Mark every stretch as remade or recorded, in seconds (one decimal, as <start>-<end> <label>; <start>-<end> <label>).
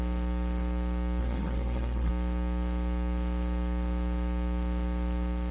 0.0-1.2 recorded; 1.2-2.1 remade; 2.1-5.5 recorded